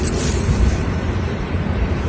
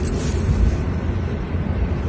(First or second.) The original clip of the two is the second